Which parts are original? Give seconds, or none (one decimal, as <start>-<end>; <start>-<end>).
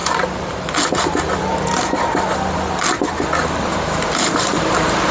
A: 0.0-3.7